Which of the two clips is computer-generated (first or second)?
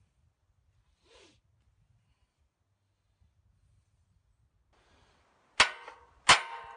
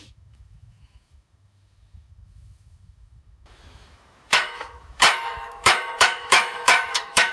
second